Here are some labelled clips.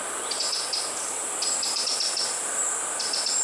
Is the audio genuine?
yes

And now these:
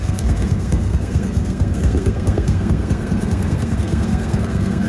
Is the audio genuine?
no